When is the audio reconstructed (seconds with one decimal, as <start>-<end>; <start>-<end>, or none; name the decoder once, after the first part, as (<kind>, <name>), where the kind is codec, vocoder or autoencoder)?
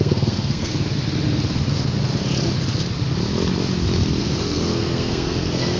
0.0-0.7 (codec, SNAC); 4.2-5.8